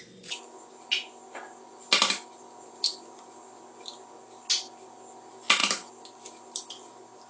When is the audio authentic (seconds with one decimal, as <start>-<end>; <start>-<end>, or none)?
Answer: 0.0-7.3